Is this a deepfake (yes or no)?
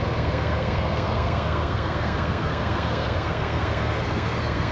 yes